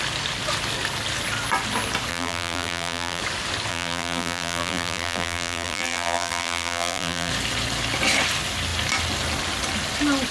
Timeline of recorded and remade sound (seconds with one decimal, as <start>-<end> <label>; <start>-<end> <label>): 0.0-2.1 recorded; 2.1-3.2 remade; 3.2-3.7 recorded; 3.7-7.3 remade; 7.3-10.3 recorded